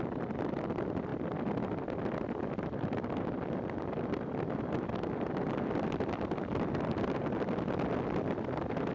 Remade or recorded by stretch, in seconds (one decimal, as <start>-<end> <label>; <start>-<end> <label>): 0.0-8.9 recorded